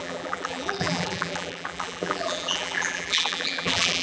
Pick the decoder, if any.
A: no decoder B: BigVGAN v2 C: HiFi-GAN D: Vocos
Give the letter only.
B